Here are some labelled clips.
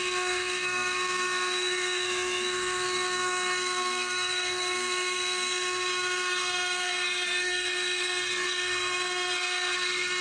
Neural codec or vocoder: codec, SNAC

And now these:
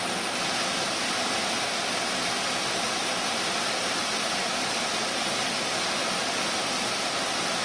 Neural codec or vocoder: none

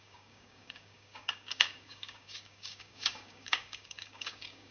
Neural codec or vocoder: codec, DAC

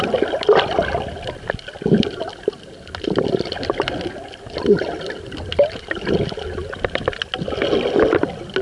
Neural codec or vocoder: none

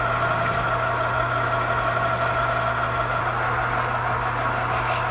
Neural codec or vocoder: none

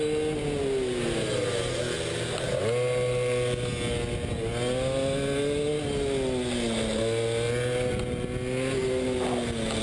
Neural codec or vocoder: none